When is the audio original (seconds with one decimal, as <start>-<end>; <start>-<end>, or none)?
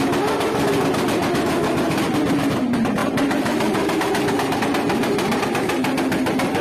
0.0-3.0; 3.9-6.6